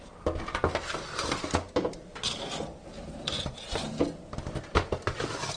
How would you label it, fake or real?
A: real